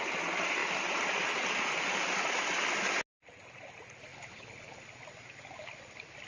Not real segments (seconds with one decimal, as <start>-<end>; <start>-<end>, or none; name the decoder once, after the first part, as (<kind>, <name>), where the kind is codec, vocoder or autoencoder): 4.1-4.8 (codec, HILCodec)